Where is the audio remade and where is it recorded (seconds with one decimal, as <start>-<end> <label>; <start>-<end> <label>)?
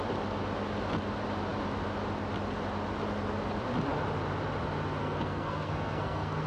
0.0-5.0 recorded; 5.0-6.5 remade